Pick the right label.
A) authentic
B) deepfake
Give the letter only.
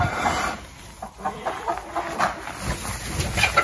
A